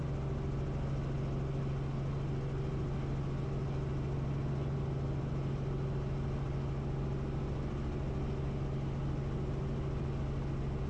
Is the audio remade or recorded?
recorded